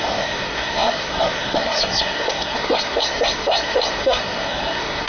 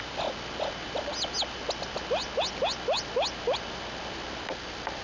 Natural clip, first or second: second